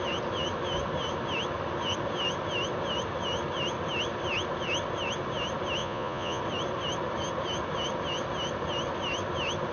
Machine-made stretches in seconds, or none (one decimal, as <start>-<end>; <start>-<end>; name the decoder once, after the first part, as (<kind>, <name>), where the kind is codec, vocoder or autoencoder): 5.8-6.4 (vocoder, Vocos)